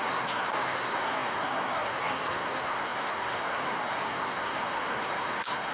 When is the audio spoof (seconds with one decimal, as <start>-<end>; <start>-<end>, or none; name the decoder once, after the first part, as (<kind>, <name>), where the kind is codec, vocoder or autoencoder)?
0.0-5.7 (codec, SNAC)